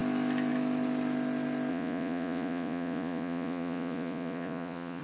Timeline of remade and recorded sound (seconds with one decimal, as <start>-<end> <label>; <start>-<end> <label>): 0.0-1.7 recorded; 1.7-5.0 remade